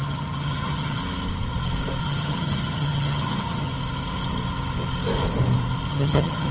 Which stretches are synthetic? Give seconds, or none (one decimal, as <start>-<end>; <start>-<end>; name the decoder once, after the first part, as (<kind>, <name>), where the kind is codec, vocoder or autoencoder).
0.0-1.0 (vocoder, HiFi-GAN); 2.0-3.7; 5.9-6.5

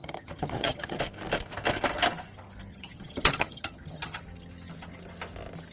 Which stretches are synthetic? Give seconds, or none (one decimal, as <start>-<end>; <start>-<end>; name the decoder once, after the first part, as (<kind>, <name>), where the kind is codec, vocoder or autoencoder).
0.0-1.0 (vocoder, HiFi-GAN); 2.7-4.2

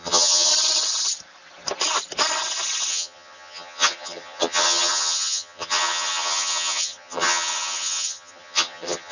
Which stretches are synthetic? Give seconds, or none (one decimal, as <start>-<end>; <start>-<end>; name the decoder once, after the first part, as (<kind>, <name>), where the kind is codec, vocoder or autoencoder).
0.0-0.5 (vocoder, HiFi-GAN); 2.9-9.1

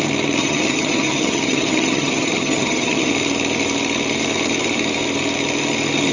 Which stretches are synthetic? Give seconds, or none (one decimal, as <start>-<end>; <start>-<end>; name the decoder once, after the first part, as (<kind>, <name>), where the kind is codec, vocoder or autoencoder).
0.4-3.1 (vocoder, HiFi-GAN)

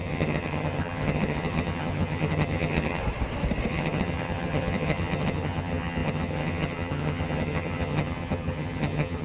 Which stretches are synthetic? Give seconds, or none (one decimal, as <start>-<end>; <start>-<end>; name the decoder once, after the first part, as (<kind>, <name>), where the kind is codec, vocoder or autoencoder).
0.0-3.0 (vocoder, HiFi-GAN); 3.7-9.2

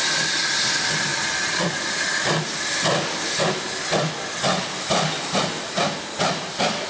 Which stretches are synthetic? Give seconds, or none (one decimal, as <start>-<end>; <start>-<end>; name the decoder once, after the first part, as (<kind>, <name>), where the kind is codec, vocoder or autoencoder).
none